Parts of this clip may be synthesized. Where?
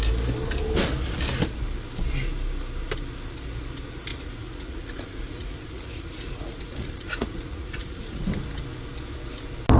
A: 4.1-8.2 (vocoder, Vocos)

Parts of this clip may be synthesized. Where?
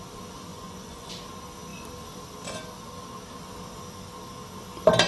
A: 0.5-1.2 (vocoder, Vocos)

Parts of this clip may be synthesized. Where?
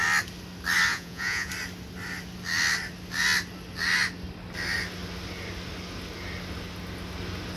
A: 0.9-1.5 (vocoder, Vocos)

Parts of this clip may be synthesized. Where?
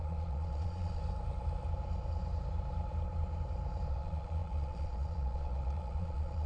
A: 0.0-1.0 (vocoder, Vocos); 3.9-6.5